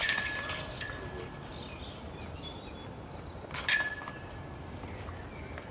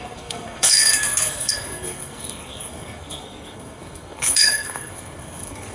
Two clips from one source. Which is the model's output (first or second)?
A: second